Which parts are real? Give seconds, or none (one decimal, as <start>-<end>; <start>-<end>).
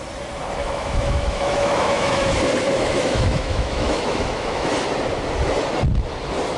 0.0-0.6; 2.3-2.7; 4.7-6.6